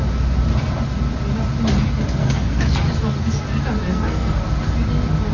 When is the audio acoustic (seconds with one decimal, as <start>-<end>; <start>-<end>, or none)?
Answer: 0.0-2.2; 2.8-3.9; 4.4-5.3